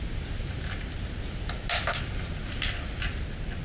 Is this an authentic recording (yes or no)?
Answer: yes